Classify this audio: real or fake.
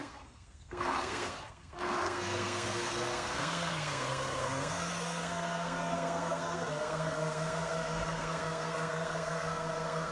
fake